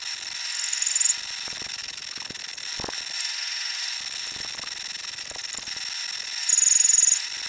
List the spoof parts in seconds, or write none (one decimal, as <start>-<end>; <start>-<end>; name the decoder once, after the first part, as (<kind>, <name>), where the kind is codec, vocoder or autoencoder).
none